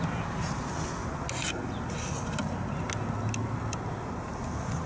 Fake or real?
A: real